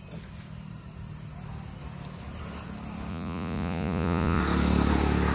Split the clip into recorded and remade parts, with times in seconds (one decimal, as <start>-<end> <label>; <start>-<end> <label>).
0.0-3.1 recorded; 3.1-4.4 remade; 4.4-5.3 recorded